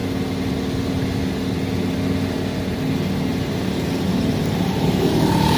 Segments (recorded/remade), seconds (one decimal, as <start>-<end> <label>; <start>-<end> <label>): 0.0-3.4 recorded; 3.4-5.6 remade